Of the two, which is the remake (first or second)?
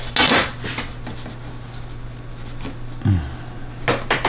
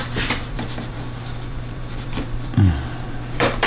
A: second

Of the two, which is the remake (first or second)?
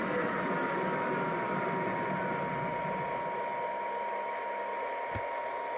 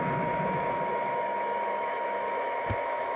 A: second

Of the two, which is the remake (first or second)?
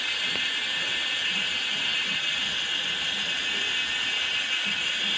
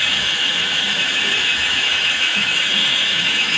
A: second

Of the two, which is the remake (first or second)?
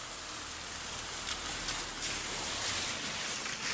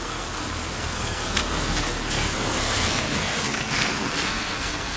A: second